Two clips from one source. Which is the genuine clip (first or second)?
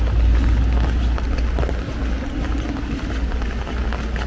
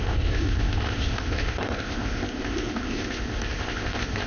first